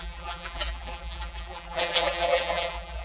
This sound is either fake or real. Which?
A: fake